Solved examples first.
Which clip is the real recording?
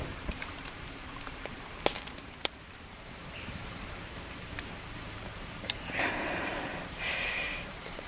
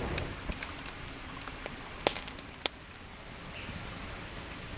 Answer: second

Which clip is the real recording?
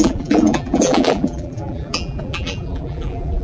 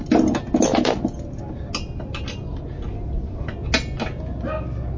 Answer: second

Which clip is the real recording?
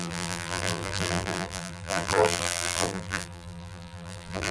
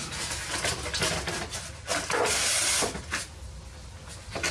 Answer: second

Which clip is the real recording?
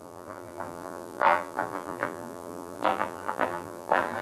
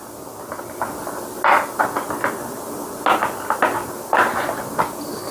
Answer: second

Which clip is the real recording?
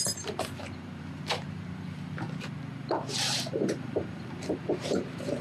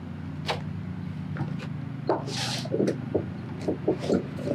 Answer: second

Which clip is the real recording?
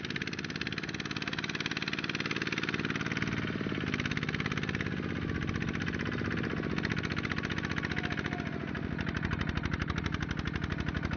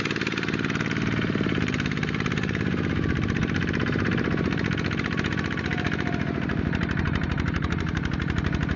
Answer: first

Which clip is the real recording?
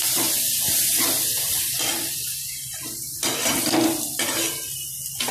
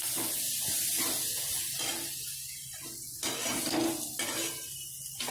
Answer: second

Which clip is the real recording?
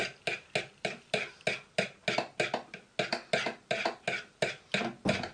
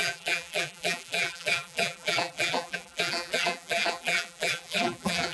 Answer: first